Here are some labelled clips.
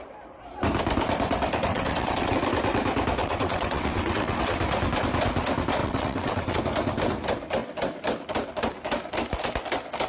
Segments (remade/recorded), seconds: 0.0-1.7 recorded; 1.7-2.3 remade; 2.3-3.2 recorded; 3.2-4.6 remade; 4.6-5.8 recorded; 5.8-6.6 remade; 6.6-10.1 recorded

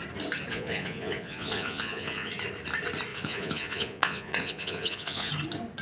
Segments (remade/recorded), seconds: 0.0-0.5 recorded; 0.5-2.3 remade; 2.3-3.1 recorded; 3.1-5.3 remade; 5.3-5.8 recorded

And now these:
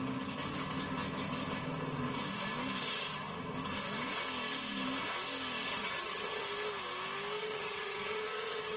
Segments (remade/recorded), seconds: 0.0-2.8 recorded; 2.8-3.3 remade; 3.3-5.7 recorded; 5.7-6.4 remade; 6.4-7.4 recorded; 7.4-8.8 remade

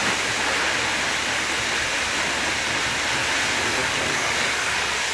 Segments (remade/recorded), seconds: 0.0-3.8 recorded; 3.8-5.1 remade

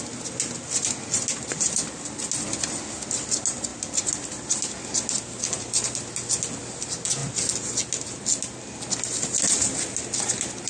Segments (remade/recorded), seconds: 0.0-10.7 recorded

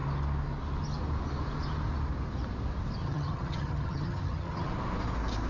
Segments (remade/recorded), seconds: 0.0-3.0 recorded; 3.0-4.7 remade; 4.7-5.5 recorded

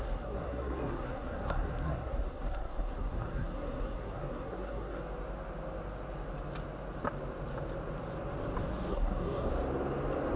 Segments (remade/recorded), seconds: 0.0-5.0 remade; 5.0-8.9 recorded; 8.9-9.5 remade; 9.5-10.4 recorded

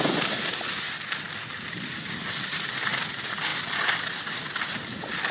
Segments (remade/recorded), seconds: 0.0-5.3 recorded